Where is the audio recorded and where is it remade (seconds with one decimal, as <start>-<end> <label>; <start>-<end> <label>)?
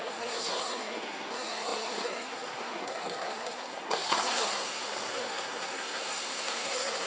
0.0-7.1 remade